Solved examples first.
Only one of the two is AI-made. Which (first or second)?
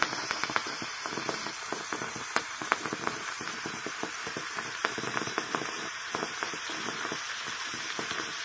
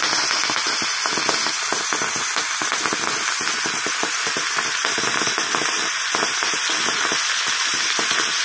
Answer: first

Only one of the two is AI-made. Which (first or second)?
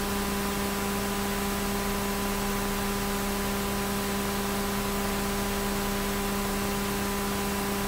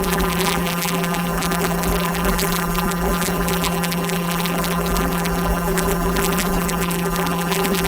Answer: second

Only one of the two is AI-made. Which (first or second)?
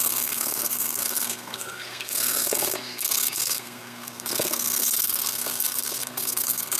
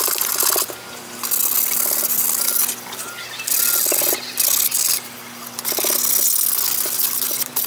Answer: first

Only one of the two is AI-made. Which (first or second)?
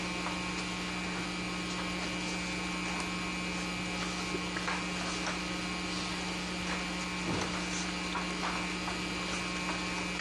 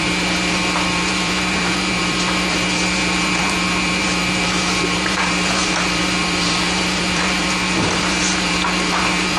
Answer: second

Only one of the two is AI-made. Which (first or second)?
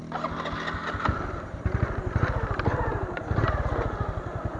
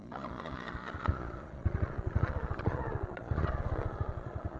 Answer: second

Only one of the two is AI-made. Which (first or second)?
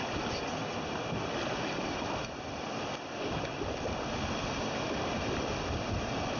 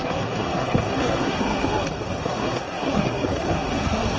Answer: second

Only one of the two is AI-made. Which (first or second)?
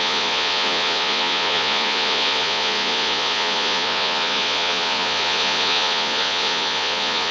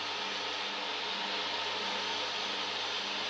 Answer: first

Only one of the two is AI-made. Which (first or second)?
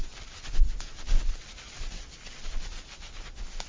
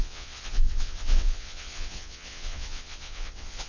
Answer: second